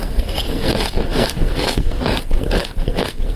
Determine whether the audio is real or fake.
fake